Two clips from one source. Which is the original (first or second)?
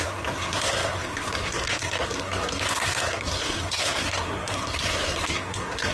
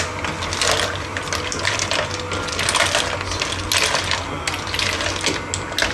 second